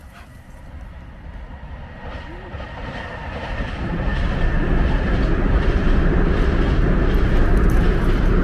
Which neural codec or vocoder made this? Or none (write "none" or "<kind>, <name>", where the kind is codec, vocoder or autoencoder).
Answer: none